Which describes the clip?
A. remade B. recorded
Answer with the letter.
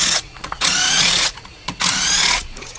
A